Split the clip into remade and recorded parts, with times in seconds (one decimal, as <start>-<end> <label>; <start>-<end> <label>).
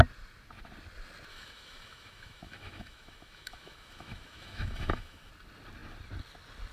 0.0-1.3 recorded; 1.3-5.3 remade; 5.3-6.7 recorded